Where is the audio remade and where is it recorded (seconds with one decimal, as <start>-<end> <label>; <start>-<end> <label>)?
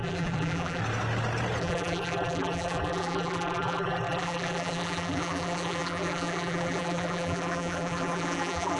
0.0-0.8 remade; 0.8-1.6 recorded; 1.6-8.8 remade